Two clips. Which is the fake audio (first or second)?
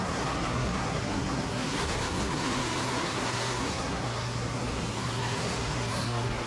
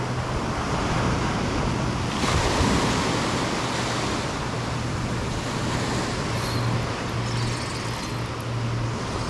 first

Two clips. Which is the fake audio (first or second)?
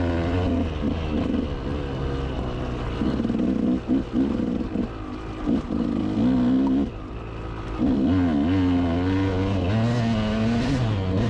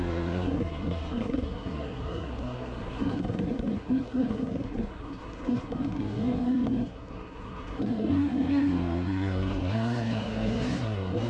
second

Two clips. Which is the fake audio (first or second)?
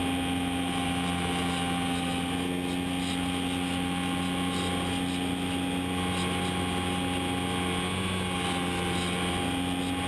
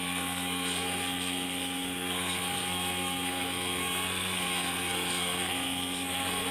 second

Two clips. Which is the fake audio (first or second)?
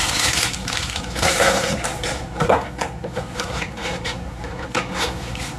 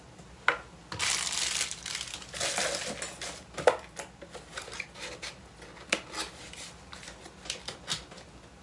first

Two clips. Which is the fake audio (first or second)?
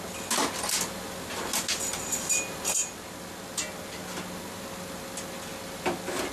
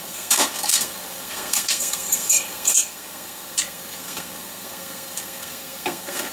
second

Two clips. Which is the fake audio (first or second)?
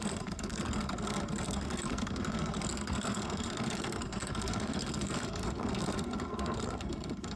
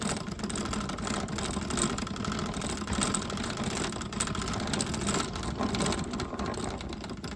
first